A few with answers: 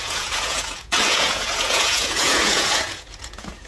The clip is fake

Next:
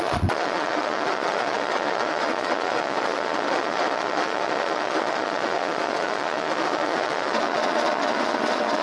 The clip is fake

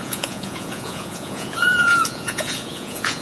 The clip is fake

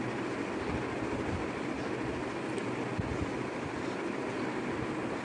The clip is real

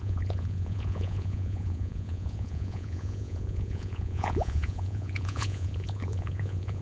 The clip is fake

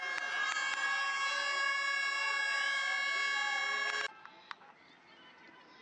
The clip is real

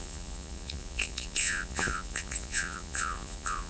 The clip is fake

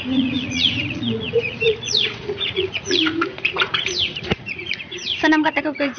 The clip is fake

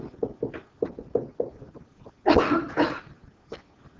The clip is real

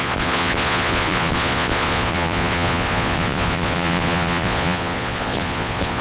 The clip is fake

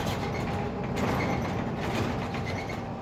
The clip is real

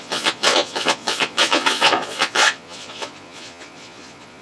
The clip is fake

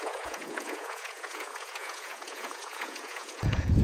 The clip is fake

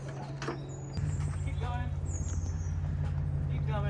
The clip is real